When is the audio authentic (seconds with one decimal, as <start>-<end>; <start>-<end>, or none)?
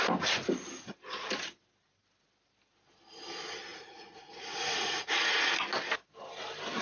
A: 0.0-3.7; 5.5-6.8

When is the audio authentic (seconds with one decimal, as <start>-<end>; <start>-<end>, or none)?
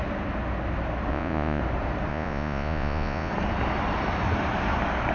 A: 0.0-1.1; 1.6-2.1; 3.3-5.1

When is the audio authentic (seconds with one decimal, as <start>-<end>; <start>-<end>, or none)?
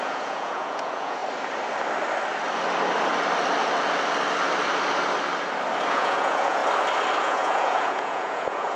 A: 1.2-5.9; 6.6-7.2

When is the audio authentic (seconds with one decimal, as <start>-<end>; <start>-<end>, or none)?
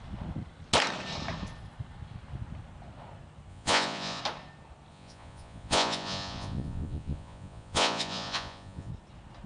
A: 0.0-3.5; 4.2-4.9; 8.9-9.5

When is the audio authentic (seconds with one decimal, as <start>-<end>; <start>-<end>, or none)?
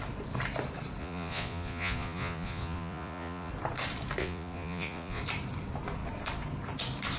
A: 0.0-1.0; 3.5-4.2; 5.2-7.2